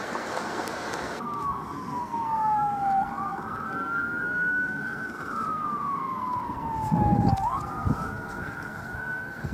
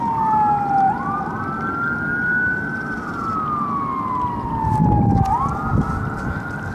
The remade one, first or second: first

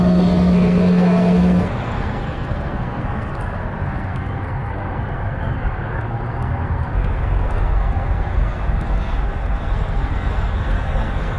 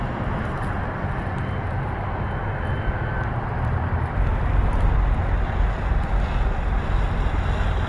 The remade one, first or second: first